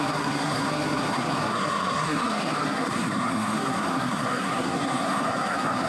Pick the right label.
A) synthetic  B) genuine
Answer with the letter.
A